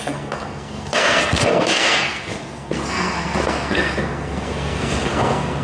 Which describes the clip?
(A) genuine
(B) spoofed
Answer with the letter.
B